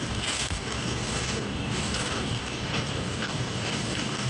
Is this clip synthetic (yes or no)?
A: yes